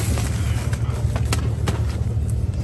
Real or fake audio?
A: real